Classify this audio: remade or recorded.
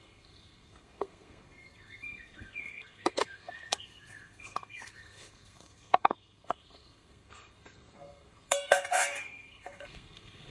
remade